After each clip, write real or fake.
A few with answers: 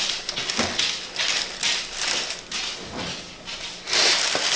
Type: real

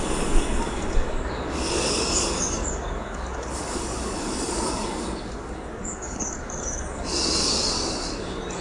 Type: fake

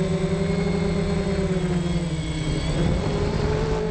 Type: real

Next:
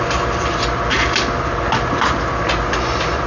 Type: real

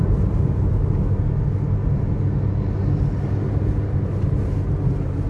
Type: real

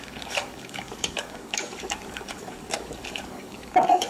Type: fake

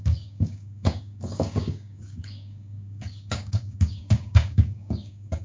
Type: fake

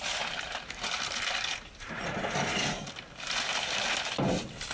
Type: real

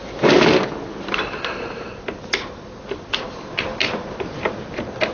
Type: real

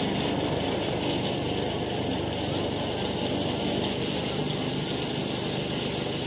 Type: real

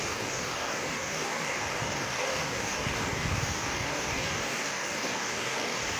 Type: fake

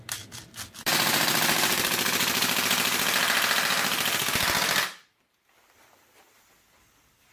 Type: real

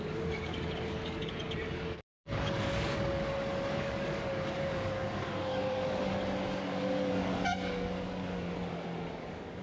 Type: fake